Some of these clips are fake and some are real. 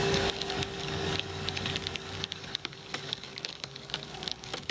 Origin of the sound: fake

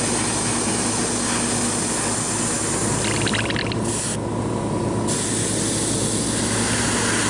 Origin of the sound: real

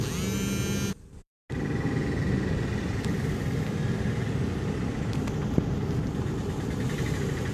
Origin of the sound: real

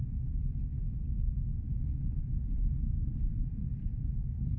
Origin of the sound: fake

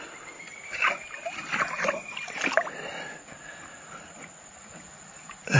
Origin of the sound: real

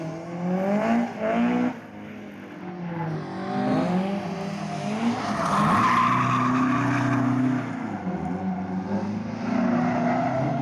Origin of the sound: real